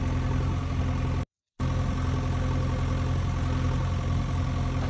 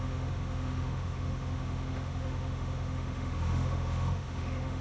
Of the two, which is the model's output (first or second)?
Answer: second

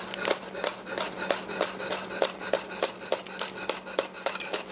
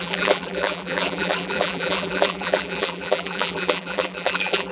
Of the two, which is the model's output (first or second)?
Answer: second